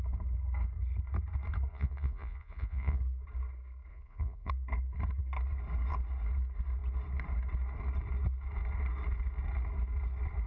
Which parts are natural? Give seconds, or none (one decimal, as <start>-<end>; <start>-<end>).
0.0-1.7; 3.0-3.9; 4.5-10.5